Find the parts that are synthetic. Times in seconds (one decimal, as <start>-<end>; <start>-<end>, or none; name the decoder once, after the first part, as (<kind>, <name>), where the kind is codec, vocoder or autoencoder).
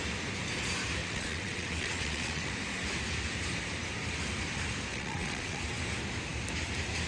1.0-2.5 (vocoder, WaveNeXt); 4.9-5.6